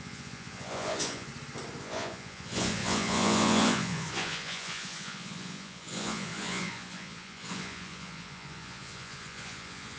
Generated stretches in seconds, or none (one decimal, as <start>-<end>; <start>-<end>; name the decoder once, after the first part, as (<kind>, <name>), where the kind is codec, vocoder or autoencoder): 0.0-1.3 (vocoder, Vocos); 1.8-10.0